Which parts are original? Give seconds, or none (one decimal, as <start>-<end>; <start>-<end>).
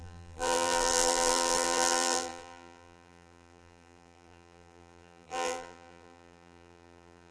none